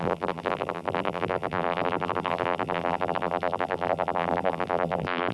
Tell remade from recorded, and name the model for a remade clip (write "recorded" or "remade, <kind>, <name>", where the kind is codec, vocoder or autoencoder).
remade, vocoder, BigVGAN v2